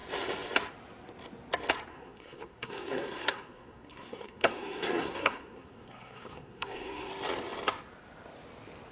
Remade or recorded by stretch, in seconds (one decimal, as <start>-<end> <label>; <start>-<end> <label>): 0.0-1.9 recorded; 1.9-7.1 remade; 7.1-8.9 recorded